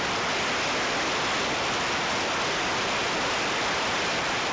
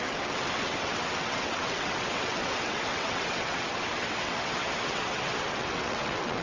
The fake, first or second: second